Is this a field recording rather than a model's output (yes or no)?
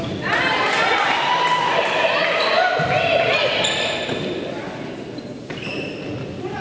yes